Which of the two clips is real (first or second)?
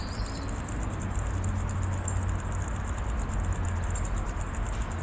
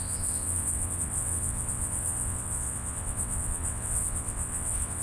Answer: first